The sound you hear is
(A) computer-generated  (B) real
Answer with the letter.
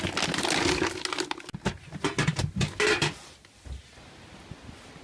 B